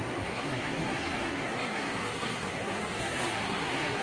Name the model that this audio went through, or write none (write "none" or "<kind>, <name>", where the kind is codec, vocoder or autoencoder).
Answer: codec, SNAC